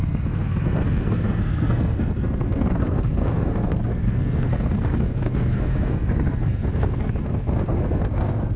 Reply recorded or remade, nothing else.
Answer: remade